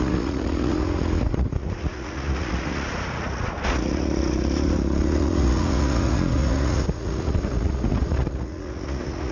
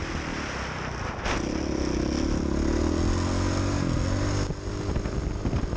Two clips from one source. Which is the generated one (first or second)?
first